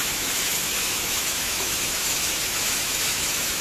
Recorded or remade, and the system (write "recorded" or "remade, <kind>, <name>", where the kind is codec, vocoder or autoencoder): remade, autoencoder, DAC-VAE